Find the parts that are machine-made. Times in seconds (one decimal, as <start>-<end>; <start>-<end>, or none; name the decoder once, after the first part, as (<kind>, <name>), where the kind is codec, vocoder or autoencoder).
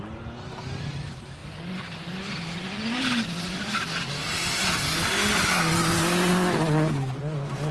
none